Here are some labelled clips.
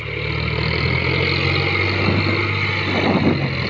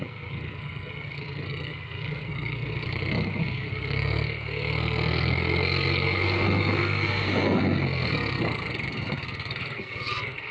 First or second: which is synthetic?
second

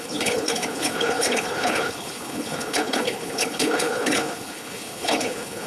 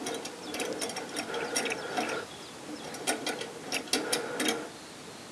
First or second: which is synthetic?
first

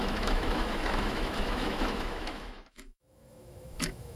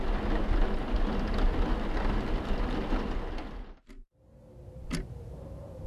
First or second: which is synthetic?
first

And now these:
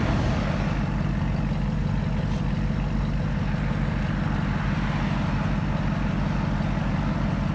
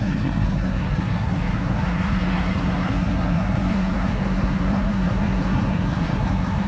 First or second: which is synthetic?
second